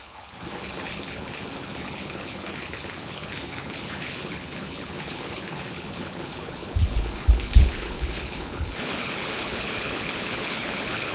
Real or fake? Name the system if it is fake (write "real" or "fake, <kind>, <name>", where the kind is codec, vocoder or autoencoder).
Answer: fake, codec, HILCodec